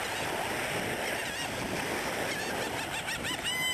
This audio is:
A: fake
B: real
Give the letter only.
B